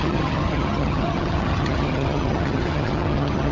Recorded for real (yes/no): no